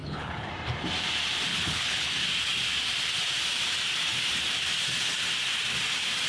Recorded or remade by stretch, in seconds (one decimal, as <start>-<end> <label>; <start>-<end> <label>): 0.0-0.5 remade; 0.5-1.5 recorded; 1.5-2.1 remade; 2.1-6.3 recorded